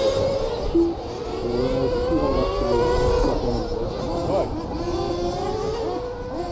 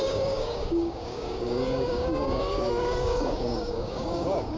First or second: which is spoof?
second